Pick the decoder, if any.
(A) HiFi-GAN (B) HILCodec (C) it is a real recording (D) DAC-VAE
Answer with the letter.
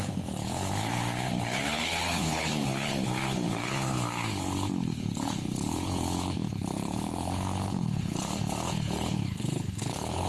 B